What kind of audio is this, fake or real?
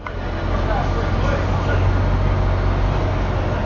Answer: real